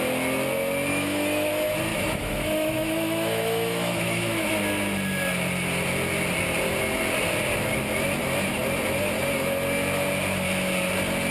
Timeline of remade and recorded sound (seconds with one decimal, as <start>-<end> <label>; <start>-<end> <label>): 0.0-0.9 recorded; 0.9-1.5 remade; 1.5-1.9 recorded; 1.9-4.5 remade; 4.5-11.3 recorded